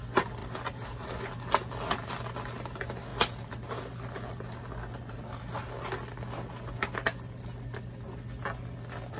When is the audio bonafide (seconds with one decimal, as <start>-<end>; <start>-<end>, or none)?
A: 0.0-0.4; 1.3-9.2